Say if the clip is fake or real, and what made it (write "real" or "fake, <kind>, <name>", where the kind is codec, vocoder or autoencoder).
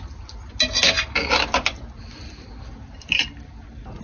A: real